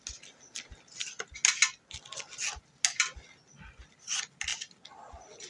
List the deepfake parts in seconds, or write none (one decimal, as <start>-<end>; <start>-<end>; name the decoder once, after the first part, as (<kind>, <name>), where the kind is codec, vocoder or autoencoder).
none

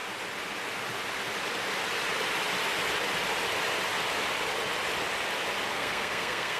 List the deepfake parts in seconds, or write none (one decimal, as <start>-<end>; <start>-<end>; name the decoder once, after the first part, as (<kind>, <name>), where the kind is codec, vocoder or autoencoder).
5.7-6.6 (codec, SNAC)